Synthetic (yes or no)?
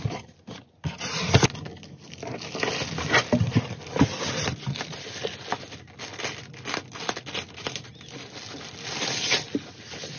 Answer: no